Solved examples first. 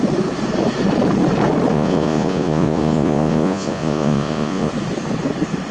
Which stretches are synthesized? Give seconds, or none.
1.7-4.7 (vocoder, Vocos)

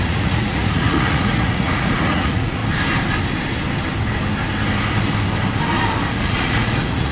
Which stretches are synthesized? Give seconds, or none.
0.0-2.6 (vocoder, Vocos); 6.1-7.1

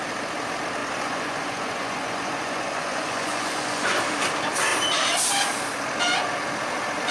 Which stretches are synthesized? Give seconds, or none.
0.8-4.0 (vocoder, Vocos)

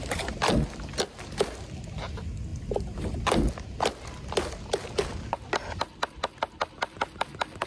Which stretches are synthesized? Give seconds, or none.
none

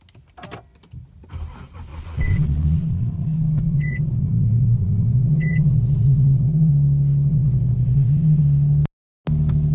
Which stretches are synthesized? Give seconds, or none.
1.9-6.7 (vocoder, Vocos); 7.3-8.4